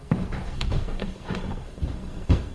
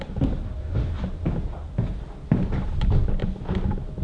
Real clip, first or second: second